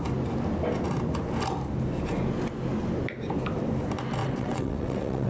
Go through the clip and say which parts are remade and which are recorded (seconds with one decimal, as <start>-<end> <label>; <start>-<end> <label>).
0.0-4.2 recorded; 4.2-5.3 remade